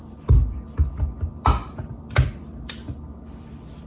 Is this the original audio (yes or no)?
no